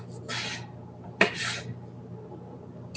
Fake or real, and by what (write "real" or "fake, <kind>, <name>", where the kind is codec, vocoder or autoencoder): real